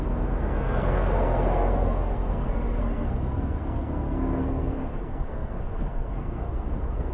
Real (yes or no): no